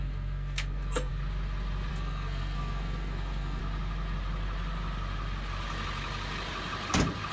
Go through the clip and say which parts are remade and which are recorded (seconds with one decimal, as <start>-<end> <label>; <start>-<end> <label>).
0.0-1.1 remade; 1.1-1.9 recorded; 1.9-3.6 remade; 3.6-7.3 recorded